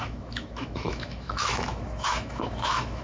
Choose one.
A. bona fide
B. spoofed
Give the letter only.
B